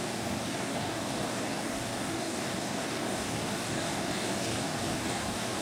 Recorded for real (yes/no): no